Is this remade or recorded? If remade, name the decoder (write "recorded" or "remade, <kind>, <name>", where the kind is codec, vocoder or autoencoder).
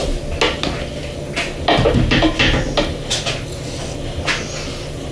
recorded